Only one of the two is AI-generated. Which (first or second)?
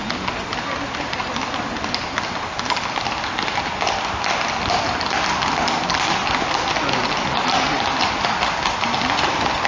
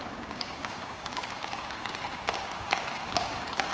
second